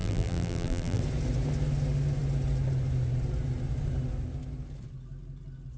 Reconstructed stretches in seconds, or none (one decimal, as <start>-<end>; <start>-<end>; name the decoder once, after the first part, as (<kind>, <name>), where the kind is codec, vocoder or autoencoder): 0.0-1.0 (vocoder, BigVGAN v2)

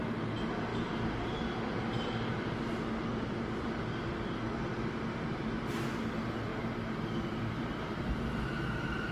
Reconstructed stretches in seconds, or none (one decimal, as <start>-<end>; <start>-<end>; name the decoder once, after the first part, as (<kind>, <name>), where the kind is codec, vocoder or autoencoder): 0.7-2.4 (vocoder, BigVGAN v2); 3.1-4.0; 6.5-8.4

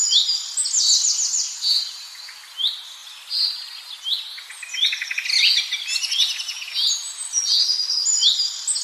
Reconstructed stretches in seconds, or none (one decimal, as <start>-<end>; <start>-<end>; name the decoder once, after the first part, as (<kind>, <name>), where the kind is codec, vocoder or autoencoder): 3.0-3.9 (vocoder, BigVGAN v2)